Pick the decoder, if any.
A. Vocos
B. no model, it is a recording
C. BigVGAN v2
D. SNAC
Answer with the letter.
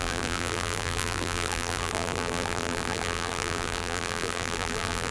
C